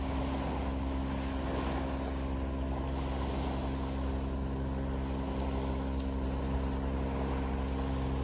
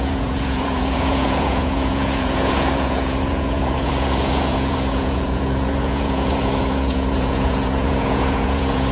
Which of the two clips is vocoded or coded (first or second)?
second